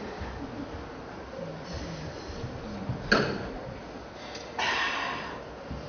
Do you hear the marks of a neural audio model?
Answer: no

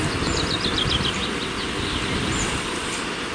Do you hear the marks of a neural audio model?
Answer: no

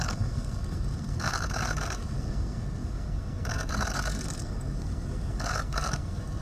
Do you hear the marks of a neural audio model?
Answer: yes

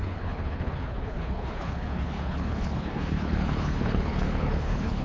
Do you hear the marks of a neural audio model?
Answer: yes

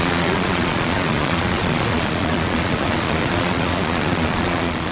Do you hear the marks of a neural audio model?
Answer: yes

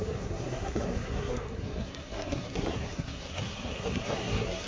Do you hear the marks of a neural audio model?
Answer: yes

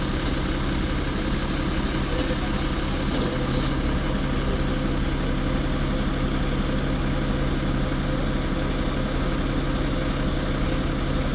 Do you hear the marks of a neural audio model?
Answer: no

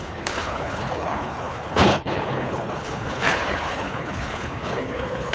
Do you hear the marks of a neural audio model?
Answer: yes